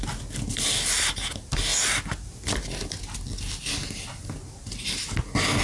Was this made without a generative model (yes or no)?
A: yes